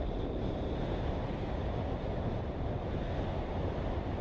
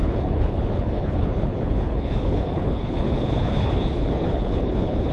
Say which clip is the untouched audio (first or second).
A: first